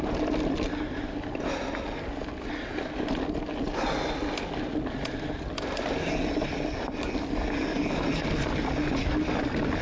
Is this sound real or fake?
real